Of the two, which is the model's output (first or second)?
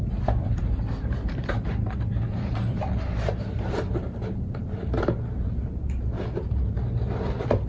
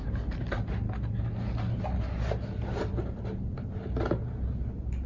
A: first